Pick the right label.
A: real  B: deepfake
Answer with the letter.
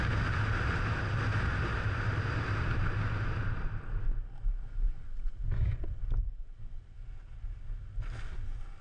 A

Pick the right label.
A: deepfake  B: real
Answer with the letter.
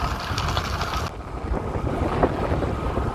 B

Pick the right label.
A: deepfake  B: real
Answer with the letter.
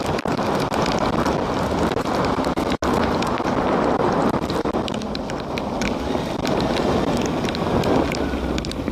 B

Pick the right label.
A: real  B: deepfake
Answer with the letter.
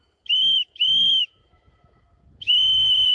B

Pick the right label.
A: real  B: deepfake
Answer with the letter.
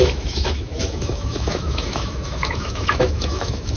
B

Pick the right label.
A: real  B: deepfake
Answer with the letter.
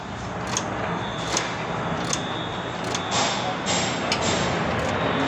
A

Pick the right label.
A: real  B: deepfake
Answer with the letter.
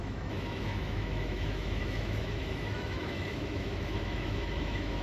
B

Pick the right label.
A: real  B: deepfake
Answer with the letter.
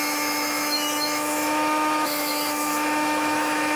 B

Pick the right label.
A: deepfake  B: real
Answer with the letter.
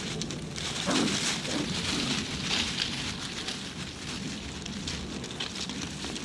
B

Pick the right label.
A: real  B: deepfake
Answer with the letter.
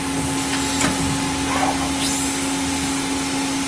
A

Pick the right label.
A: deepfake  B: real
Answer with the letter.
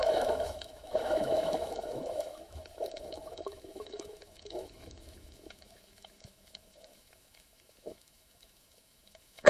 A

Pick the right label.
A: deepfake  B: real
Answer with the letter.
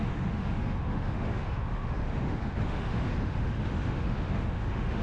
A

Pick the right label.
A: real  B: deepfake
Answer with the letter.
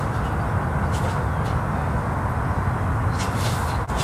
A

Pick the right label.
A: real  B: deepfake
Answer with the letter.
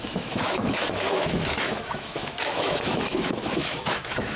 B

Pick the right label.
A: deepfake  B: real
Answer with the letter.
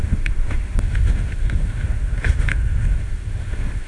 A